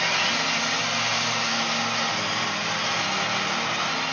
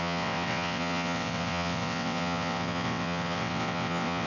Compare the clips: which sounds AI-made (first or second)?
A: second